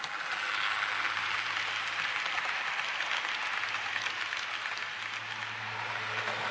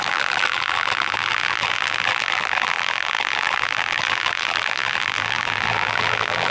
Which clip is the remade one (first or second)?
second